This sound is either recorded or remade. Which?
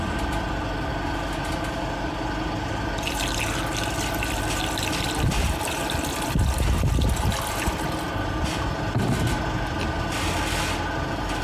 recorded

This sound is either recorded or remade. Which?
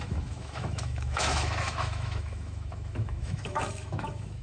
remade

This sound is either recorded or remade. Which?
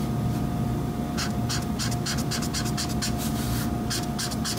recorded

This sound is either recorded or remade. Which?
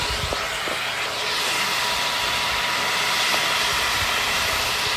recorded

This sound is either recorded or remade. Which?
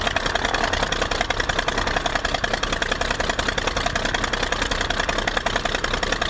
recorded